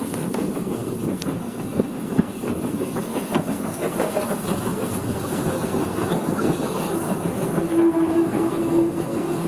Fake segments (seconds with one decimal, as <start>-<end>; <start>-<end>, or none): 0.0-9.5